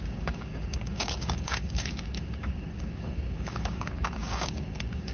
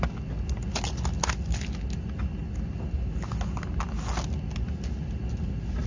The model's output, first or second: first